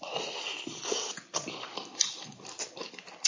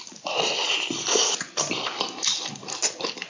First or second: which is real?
second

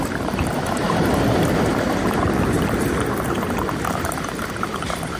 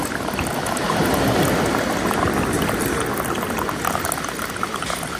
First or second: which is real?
second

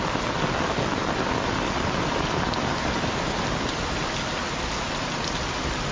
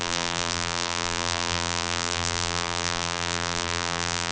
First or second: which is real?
first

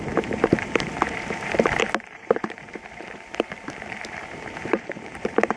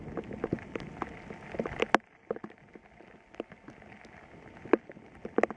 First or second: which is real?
second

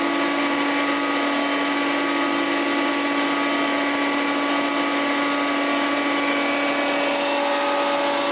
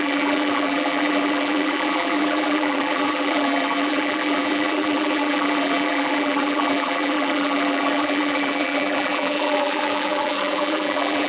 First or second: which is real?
first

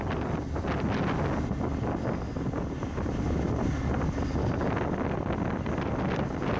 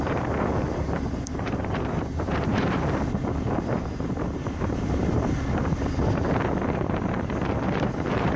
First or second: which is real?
first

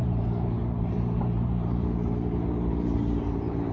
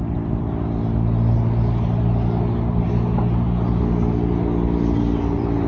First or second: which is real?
second